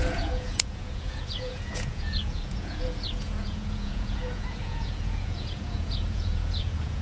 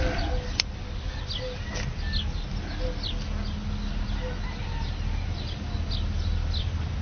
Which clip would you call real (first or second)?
second